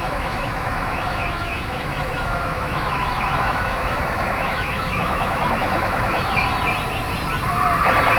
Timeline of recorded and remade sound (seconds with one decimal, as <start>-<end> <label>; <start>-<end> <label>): 0.0-6.5 remade; 6.5-8.2 recorded